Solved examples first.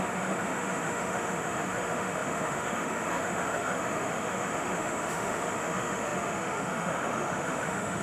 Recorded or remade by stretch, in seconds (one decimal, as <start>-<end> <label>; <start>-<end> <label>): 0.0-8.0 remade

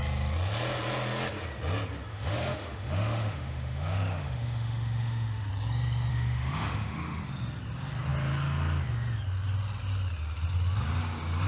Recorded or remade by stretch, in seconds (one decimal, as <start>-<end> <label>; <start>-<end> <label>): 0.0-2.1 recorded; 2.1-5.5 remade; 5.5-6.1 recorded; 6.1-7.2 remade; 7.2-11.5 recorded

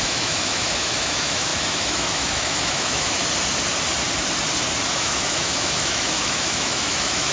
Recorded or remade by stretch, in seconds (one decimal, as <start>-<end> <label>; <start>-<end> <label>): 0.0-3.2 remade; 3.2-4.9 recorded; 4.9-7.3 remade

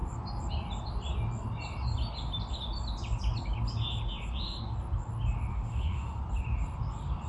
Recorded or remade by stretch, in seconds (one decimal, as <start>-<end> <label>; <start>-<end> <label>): 0.0-5.5 recorded; 5.5-6.2 remade; 6.2-7.3 recorded

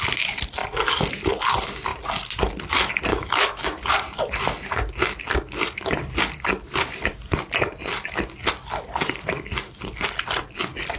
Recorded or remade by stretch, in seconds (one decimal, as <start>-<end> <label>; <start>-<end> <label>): 0.0-3.1 recorded; 3.1-3.9 remade; 3.9-11.0 recorded

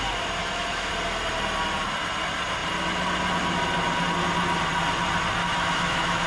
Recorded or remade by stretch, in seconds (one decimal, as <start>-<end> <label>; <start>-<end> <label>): 0.0-0.4 recorded; 0.4-0.9 remade; 0.9-5.4 recorded; 5.4-6.3 remade

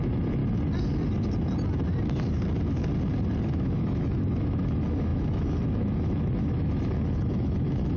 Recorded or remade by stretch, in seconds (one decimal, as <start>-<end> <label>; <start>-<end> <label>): 0.0-0.4 remade; 0.4-3.4 recorded; 3.4-8.0 remade

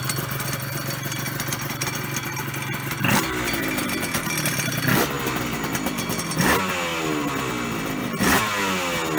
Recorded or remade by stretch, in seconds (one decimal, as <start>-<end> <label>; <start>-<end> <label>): 0.0-9.2 recorded